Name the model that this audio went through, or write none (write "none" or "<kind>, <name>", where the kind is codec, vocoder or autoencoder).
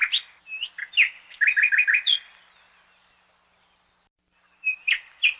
none